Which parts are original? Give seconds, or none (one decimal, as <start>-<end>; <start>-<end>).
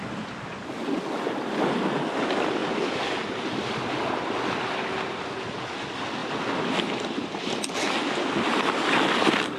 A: 0.0-9.6